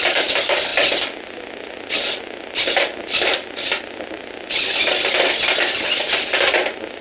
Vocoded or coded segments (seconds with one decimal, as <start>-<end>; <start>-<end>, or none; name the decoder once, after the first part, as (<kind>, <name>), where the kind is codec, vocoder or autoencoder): 0.7-4.9 (vocoder, BigVGAN v2)

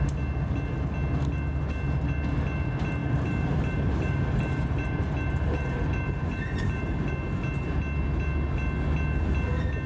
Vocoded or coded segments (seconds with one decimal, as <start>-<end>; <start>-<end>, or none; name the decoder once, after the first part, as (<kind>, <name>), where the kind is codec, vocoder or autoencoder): 3.0-7.1 (vocoder, BigVGAN v2)

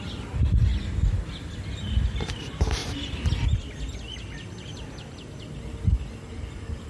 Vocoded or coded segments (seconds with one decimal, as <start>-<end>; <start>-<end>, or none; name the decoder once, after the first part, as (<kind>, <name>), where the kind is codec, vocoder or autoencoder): none